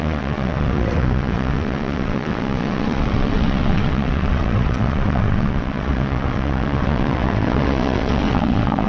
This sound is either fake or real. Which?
fake